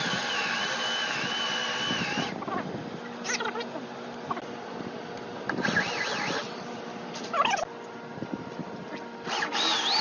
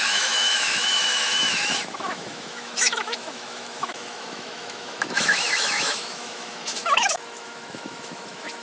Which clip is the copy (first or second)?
second